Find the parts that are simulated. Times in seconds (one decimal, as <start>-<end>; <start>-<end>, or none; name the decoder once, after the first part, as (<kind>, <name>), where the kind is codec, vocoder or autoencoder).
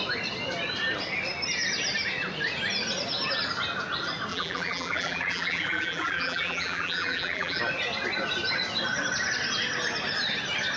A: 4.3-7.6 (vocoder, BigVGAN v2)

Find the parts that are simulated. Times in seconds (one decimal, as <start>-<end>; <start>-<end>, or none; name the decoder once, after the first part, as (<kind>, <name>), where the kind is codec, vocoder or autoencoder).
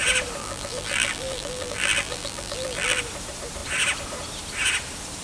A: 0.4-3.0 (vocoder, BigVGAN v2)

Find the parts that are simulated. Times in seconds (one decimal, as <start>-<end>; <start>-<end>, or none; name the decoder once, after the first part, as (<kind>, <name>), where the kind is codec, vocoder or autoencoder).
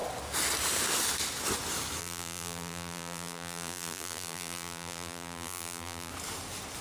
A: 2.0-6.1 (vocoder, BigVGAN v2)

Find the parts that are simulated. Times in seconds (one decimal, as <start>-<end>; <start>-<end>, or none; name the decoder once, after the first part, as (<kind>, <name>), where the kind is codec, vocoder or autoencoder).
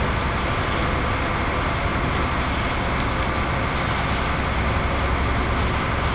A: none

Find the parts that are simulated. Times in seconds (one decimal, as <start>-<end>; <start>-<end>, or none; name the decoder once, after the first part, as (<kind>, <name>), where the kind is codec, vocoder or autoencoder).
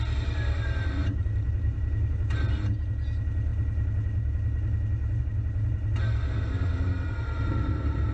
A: 1.0-2.1 (vocoder, BigVGAN v2)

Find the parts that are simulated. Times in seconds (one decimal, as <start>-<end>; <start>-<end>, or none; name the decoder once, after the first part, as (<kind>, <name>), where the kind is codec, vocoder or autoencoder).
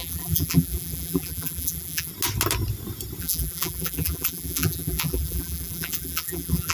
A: 0.0-2.1 (vocoder, BigVGAN v2); 3.2-6.7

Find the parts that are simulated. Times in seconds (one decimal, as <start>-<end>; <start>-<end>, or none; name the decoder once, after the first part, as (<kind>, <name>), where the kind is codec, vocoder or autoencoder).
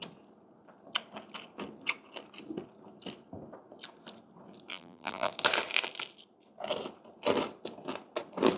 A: 4.7-5.3 (vocoder, BigVGAN v2)